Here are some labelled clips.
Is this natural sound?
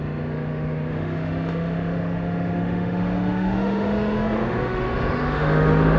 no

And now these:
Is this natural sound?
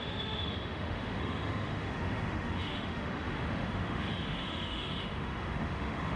no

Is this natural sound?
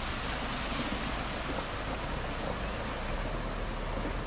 yes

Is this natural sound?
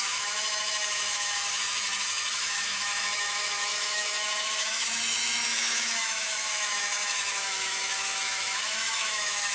no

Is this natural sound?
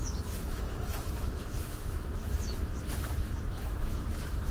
no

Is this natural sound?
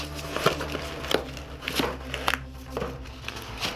yes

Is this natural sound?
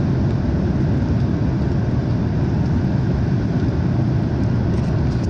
yes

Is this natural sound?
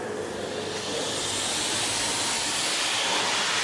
yes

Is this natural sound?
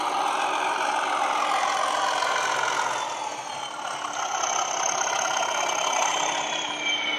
yes